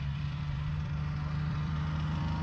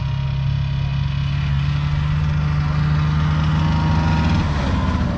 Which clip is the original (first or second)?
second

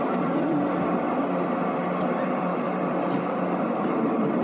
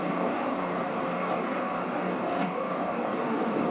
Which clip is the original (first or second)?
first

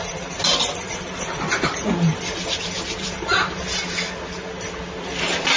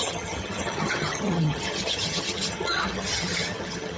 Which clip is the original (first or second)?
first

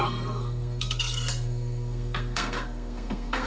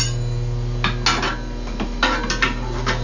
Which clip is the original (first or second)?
second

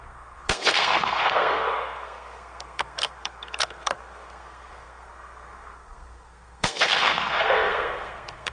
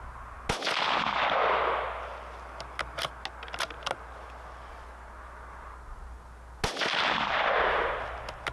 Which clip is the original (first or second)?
second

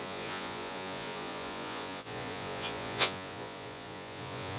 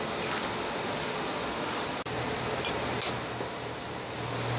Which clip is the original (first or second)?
second